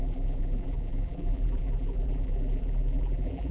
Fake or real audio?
fake